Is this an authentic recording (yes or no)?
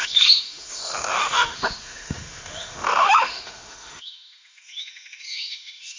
no